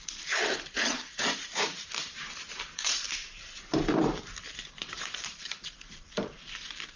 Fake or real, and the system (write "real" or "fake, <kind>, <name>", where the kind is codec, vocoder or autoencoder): fake, vocoder, BigVGAN v2